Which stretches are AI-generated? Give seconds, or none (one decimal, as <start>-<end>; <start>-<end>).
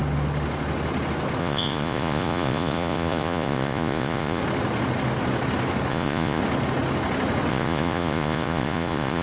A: 1.4-4.4; 5.9-6.4; 7.5-9.2